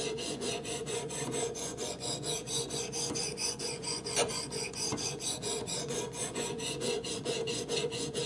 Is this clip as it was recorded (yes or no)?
no